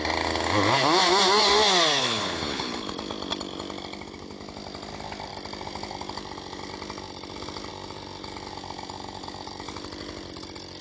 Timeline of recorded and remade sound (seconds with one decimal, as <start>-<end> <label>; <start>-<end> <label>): 0.0-2.0 recorded; 2.0-2.9 remade; 2.9-10.8 recorded